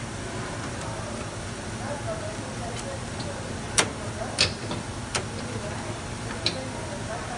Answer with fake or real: fake